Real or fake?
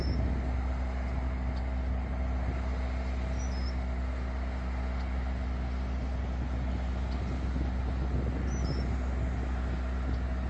real